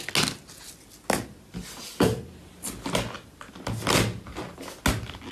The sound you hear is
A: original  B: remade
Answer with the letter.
A